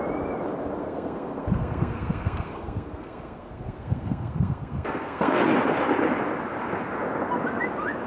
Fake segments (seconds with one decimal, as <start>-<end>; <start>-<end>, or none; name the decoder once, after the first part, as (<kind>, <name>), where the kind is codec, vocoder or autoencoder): 0.8-5.4 (codec, SNAC)